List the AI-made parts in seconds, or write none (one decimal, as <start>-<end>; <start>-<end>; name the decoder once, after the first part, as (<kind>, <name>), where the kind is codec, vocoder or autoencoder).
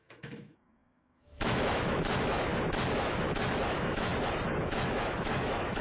0.0-2.5 (autoencoder, DAC-VAE); 3.0-4.1; 4.6-5.8